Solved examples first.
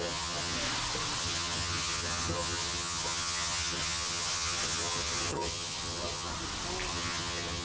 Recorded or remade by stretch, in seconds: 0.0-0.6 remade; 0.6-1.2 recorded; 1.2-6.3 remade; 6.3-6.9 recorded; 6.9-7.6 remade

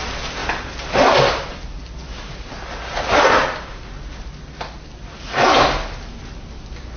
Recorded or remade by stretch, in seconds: 0.0-0.4 recorded; 0.4-1.7 remade; 1.7-7.0 recorded